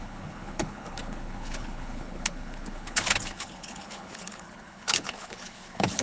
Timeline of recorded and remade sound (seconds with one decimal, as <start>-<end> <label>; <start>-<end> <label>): 0.0-6.0 remade